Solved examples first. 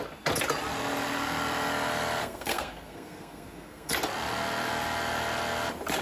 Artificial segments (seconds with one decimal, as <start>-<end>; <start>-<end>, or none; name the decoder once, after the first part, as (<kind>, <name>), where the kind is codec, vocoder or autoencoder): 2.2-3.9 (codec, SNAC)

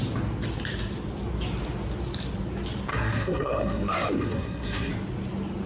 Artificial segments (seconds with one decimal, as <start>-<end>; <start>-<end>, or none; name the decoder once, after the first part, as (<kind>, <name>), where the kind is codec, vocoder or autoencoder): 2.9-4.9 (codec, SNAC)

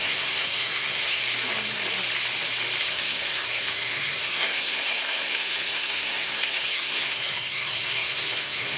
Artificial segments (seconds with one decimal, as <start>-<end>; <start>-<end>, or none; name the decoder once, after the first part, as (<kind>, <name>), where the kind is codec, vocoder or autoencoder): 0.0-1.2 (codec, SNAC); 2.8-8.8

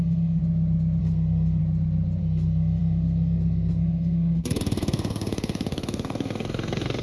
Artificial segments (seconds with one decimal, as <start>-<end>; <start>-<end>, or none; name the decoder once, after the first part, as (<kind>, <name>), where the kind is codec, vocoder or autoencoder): 0.0-0.4 (codec, SNAC); 1.0-1.6; 2.2-7.0

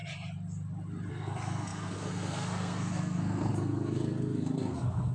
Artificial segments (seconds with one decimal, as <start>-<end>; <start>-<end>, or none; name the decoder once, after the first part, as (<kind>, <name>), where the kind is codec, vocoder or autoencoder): 1.1-5.1 (codec, SNAC)

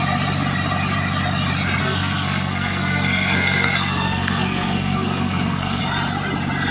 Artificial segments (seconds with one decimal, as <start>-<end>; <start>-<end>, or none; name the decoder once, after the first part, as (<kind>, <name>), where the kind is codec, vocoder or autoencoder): 1.8-5.8 (codec, SNAC)

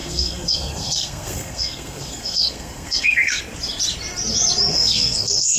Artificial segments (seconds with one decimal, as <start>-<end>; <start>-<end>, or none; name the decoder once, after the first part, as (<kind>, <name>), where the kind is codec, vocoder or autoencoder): 0.0-3.4 (codec, SNAC); 4.7-5.6

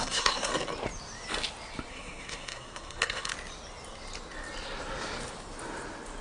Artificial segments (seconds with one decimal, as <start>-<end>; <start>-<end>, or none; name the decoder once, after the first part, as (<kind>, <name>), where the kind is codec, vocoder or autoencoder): 0.0-0.5 (codec, SNAC); 1.9-3.3